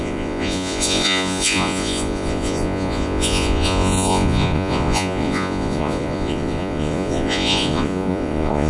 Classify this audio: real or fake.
fake